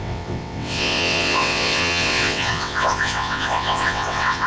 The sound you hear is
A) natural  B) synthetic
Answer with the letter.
B